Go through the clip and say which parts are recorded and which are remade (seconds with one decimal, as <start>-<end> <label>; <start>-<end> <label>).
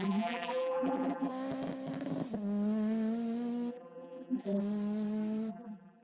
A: 0.0-1.3 remade; 1.3-3.7 recorded; 3.7-4.6 remade; 4.6-5.5 recorded; 5.5-6.0 remade